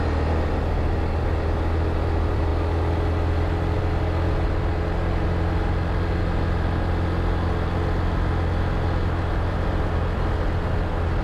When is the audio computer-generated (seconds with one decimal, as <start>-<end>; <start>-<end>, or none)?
none